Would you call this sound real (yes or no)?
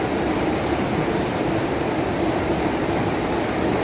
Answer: yes